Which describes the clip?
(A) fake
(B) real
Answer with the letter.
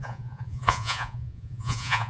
A